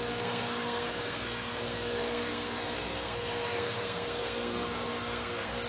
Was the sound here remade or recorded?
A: remade